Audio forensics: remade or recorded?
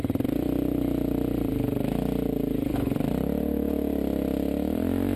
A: remade